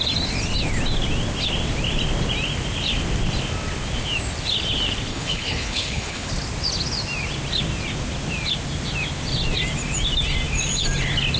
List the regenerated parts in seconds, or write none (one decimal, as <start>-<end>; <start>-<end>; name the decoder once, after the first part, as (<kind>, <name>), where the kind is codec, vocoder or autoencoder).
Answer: 5.1-6.3 (codec, HILCodec)